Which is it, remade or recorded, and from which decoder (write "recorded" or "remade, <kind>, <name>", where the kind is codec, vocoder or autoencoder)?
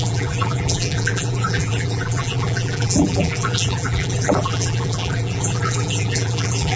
remade, vocoder, BigVGAN v2